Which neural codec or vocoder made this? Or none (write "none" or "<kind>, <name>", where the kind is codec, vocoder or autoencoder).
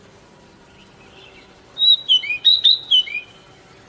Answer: vocoder, BigVGAN v2